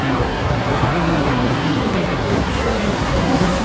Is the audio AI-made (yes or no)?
yes